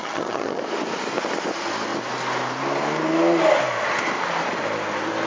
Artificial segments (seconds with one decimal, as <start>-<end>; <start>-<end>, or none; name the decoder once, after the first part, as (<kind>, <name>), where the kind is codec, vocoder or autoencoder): 0.0-0.6 (vocoder, HiFi-GAN)

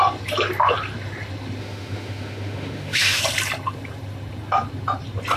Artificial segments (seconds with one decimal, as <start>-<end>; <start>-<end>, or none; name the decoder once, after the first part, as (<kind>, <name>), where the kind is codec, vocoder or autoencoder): 1.6-3.2 (autoencoder, DAC-VAE)

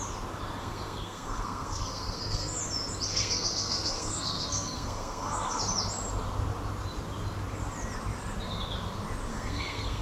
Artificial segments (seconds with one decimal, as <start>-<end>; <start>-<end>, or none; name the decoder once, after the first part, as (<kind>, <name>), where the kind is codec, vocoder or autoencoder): 0.6-2.6 (codec, SNAC); 3.1-5.6; 9.3-10.0

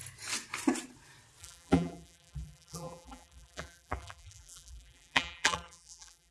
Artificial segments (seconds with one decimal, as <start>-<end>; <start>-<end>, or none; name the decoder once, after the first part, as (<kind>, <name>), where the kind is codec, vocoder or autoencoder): 1.4-6.3 (vocoder, BigVGAN v2)